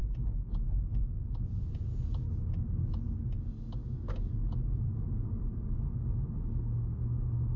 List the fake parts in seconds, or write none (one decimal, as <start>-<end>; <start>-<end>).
3.8-4.3